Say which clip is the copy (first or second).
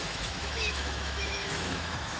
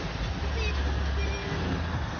first